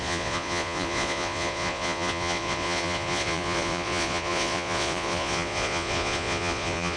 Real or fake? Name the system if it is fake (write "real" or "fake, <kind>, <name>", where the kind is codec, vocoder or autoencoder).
fake, vocoder, Vocos